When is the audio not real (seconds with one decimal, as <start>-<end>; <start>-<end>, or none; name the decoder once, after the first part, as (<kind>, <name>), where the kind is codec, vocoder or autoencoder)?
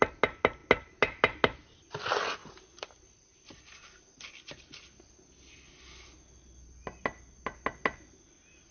2.4-3.4 (vocoder, BigVGAN v2)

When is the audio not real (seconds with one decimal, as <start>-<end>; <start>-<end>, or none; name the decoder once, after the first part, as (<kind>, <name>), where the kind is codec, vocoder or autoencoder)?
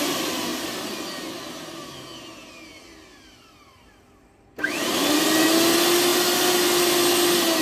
none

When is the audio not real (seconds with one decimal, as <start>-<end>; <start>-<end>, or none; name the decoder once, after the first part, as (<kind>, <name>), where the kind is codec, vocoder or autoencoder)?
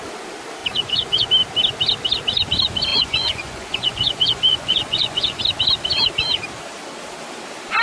0.6-1.3 (vocoder, Vocos); 2.9-5.4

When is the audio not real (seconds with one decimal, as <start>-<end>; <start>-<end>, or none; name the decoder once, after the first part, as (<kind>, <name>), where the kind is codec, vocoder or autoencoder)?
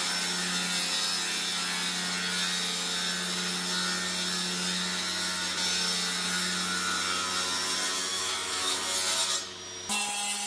8.1-8.8 (autoencoder, DAC-VAE)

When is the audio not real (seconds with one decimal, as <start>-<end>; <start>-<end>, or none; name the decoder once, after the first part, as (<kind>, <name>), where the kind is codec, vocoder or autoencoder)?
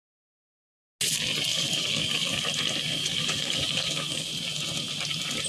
1.5-2.4 (codec, DAC); 3.0-4.3